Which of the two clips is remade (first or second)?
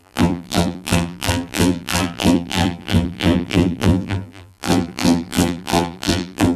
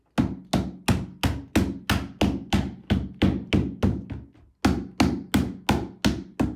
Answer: first